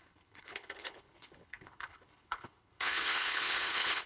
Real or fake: fake